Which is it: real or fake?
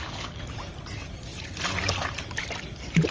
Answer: real